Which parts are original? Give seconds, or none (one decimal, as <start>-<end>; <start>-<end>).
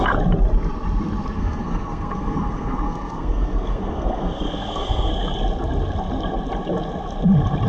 0.0-1.4; 5.1-7.7